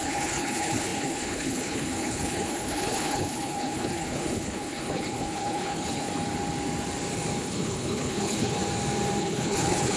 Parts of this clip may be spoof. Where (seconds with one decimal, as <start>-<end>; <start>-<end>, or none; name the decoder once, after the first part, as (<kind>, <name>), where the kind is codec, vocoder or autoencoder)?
0.0-6.1 (codec, HILCodec); 7.4-8.6; 9.2-10.0